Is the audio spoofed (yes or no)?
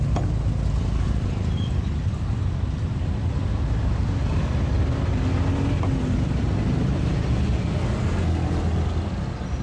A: no